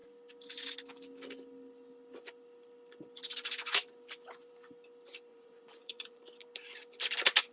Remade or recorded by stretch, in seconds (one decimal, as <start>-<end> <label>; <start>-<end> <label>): 0.0-5.3 recorded; 5.3-6.2 remade; 6.2-7.5 recorded